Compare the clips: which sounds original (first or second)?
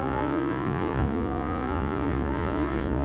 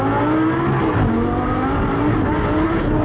second